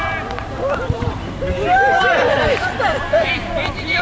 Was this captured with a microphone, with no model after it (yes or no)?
no